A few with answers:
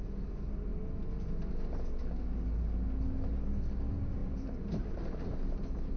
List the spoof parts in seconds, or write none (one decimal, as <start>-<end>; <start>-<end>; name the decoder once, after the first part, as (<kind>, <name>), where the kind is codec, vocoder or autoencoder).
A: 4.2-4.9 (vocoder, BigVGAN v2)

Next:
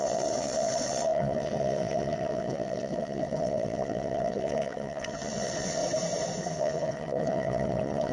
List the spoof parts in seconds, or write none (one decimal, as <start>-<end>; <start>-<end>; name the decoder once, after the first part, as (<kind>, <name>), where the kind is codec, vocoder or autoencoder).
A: 0.0-5.8 (vocoder, WaveNeXt); 6.4-8.1

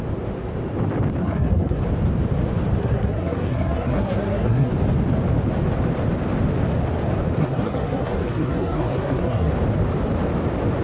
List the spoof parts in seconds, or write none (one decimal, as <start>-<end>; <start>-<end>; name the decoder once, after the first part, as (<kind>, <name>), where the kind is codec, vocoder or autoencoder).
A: 1.2-1.8 (codec, SNAC); 2.8-4.7; 7.4-9.5

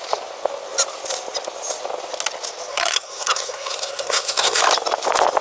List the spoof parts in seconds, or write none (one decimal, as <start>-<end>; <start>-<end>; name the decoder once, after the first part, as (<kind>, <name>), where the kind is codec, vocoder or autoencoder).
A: 2.7-4.6 (codec, SNAC)

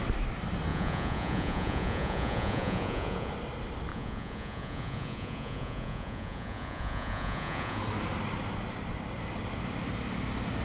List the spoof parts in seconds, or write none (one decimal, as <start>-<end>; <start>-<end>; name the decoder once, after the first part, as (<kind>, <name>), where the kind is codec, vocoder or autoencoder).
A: 0.7-3.3 (vocoder, Vocos); 3.9-7.8

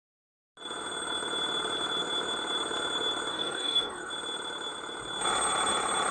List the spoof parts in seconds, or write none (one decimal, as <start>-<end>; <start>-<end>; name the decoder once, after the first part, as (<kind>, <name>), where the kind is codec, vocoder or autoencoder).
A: 3.3-4.1 (codec, DAC)